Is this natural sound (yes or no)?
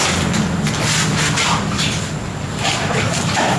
yes